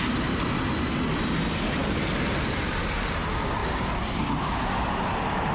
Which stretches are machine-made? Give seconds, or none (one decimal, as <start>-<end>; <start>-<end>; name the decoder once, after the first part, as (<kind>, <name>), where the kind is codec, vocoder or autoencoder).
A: none